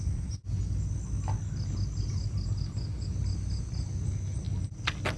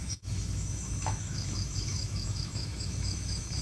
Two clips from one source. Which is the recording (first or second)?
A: first